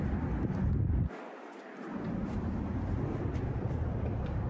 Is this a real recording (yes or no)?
yes